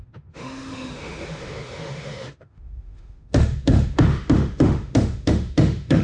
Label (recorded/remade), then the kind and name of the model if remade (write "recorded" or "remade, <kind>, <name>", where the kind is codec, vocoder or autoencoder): remade, autoencoder, DAC-VAE